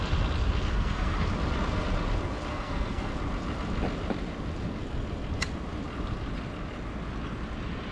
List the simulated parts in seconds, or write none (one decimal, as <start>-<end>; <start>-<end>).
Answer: 0.7-1.2; 2.5-3.1